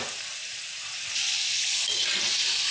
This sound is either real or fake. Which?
real